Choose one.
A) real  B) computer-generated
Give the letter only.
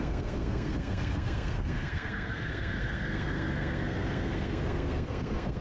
B